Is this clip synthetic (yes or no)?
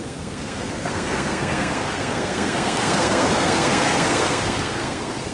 yes